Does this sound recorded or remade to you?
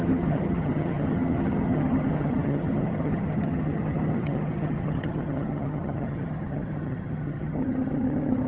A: remade